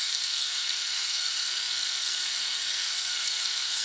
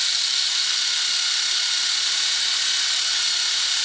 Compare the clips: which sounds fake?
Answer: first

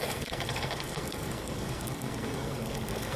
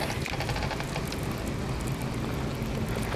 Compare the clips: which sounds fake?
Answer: first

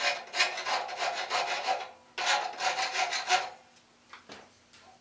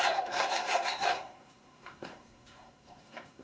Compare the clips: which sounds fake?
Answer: second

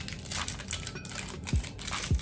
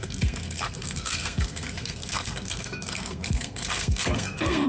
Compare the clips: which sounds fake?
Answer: second